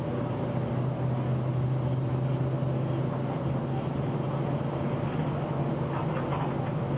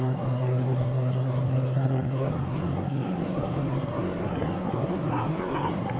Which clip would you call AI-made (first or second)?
second